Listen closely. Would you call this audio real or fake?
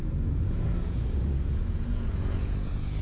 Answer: fake